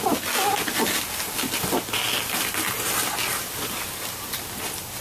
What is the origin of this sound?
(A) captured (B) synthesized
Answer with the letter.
A